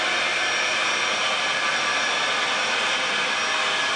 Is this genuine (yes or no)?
yes